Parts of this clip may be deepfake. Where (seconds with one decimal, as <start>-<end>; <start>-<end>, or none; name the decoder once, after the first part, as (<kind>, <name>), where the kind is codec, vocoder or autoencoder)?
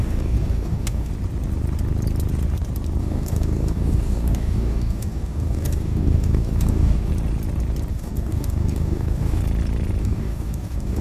0.0-1.1 (codec, DAC); 3.0-7.1; 7.9-9.4; 10.0-11.0